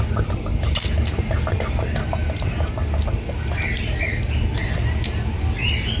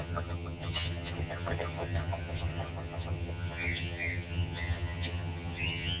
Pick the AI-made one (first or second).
second